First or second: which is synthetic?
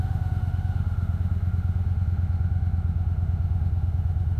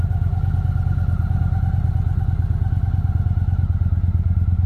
first